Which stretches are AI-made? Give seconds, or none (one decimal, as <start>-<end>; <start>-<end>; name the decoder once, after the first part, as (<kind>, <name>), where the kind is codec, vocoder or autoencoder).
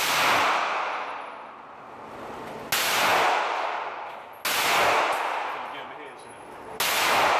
none